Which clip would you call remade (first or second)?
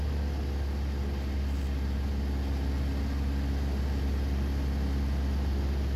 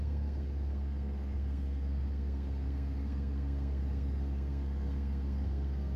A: second